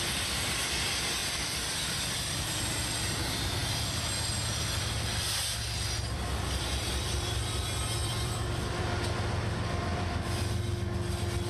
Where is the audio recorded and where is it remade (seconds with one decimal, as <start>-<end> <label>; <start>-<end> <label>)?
0.0-1.2 recorded; 1.2-2.6 remade; 2.6-8.0 recorded; 8.0-8.6 remade; 8.6-9.9 recorded; 9.9-10.4 remade; 10.4-11.5 recorded